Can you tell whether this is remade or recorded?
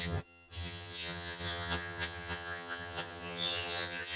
remade